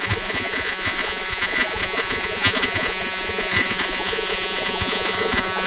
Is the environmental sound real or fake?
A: fake